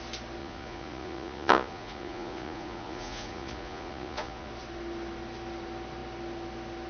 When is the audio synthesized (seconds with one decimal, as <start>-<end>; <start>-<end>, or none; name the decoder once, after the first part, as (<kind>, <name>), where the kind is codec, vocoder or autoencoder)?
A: 0.4-4.5 (vocoder, Vocos)